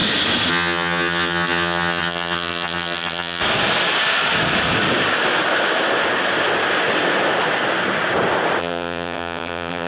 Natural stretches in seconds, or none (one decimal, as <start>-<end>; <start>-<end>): 0.0-0.5; 3.4-8.6